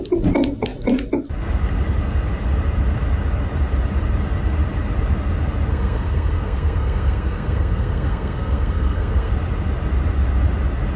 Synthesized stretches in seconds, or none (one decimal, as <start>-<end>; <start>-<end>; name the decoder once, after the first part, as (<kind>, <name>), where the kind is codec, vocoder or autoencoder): 5.7-9.3 (codec, SNAC)